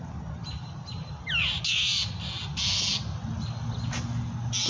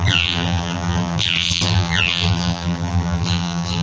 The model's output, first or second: second